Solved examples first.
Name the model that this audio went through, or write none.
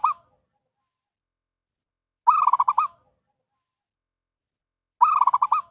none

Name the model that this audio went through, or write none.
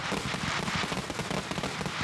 none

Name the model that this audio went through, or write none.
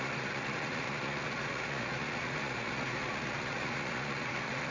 vocoder, Vocos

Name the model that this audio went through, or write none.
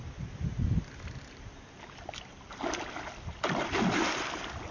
none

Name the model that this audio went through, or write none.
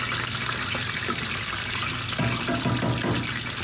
none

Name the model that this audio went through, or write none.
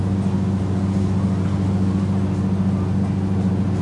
none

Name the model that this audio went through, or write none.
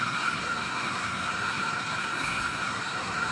codec, SNAC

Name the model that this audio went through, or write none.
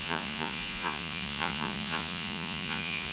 vocoder, Vocos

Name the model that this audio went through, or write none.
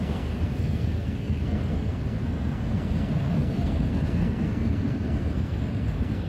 codec, SNAC